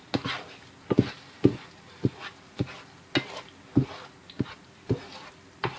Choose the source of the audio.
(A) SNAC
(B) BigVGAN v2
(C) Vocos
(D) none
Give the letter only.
D